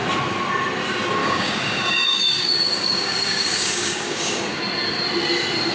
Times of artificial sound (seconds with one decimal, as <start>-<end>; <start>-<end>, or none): 1.2-4.6